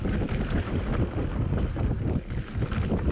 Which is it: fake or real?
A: real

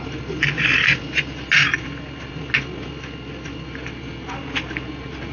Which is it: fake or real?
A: real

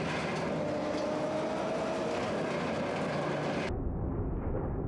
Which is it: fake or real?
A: real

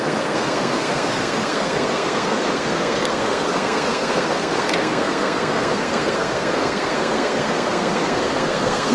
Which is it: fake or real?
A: fake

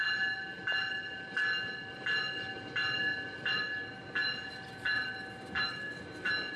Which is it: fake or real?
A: real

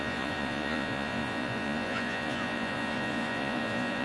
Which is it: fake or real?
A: fake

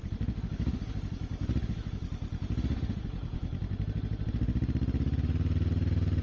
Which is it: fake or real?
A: real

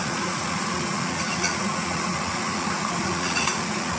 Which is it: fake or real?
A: fake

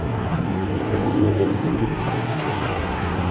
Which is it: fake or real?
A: fake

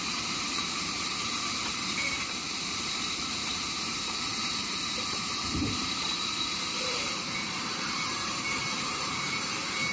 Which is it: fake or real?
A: fake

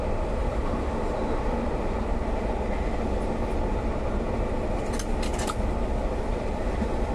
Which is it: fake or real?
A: real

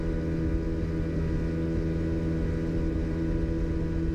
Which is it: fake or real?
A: real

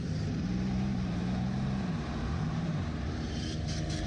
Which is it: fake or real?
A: fake